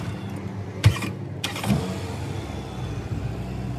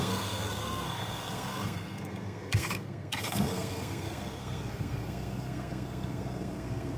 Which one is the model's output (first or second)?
second